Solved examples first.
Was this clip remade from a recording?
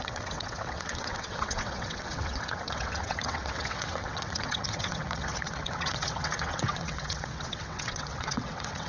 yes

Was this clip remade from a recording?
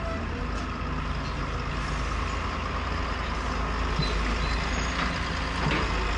no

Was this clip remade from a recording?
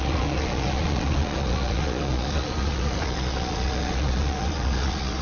yes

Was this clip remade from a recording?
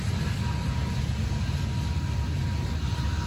no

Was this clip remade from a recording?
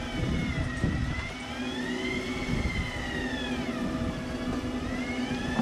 no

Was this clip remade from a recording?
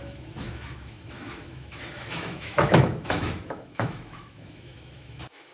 yes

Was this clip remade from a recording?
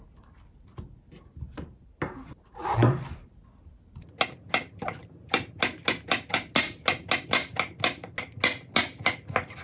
no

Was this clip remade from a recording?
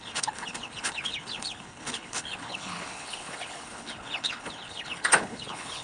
yes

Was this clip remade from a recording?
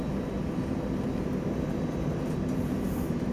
no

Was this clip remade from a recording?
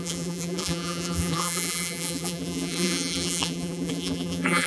yes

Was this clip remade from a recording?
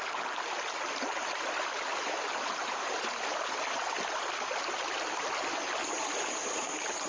no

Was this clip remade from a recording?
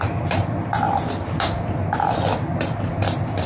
no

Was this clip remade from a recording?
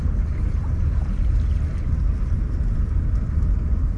no